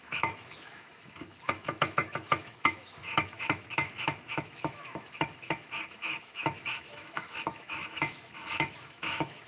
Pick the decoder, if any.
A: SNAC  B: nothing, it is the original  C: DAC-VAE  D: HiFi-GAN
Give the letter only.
C